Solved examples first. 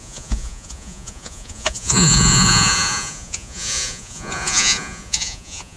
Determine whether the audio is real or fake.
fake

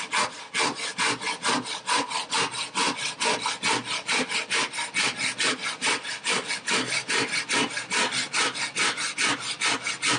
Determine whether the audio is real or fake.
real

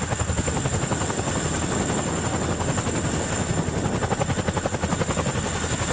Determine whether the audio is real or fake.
real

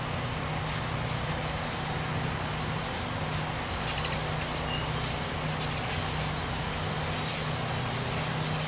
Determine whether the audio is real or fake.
real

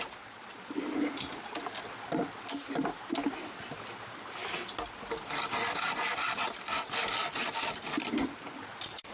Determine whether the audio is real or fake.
real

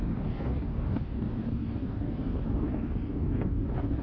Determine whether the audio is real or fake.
fake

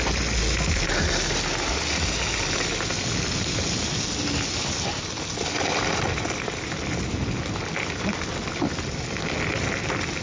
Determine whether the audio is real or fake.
real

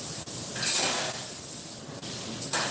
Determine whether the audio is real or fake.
real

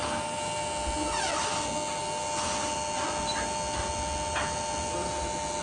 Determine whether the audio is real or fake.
real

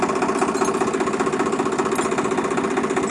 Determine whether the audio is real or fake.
real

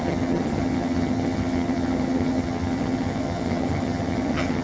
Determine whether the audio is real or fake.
fake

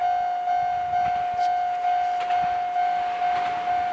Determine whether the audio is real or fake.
real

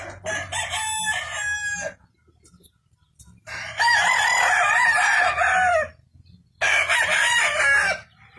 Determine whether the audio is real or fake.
real